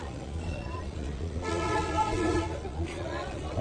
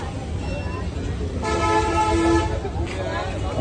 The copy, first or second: first